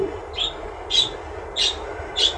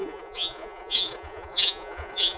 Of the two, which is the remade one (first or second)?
second